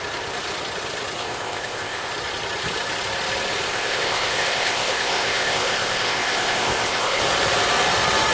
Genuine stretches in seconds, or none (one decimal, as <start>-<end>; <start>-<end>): 0.0-1.2; 2.1-3.7; 7.2-8.3